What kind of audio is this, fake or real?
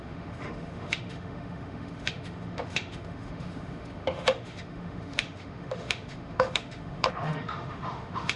fake